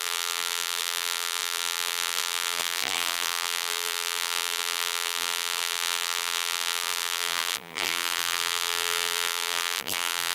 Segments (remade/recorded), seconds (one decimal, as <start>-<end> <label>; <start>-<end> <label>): 0.0-10.3 remade